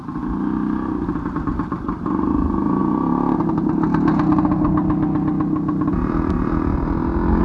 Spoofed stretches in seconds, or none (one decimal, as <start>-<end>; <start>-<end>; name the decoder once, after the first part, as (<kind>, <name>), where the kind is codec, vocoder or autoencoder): none